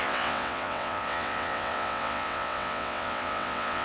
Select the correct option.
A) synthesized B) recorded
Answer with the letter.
A